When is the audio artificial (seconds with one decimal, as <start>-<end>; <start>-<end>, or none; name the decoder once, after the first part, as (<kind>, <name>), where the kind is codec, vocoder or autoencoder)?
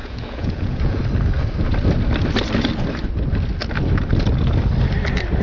0.0-1.0 (vocoder, Vocos)